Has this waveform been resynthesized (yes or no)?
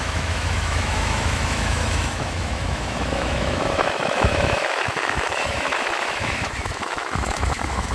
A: yes